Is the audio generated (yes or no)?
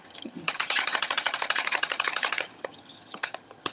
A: yes